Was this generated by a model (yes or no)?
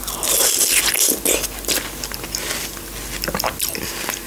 no